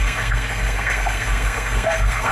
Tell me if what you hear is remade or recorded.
remade